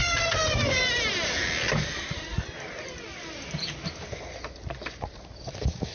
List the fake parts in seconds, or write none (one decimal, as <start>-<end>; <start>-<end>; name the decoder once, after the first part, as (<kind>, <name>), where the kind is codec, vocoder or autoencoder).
none